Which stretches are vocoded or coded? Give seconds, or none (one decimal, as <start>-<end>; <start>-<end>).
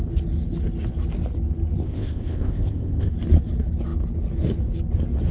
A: 1.8-3.1